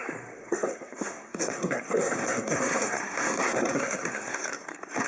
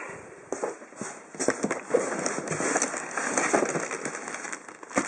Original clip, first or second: second